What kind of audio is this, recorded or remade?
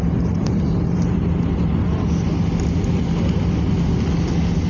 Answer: recorded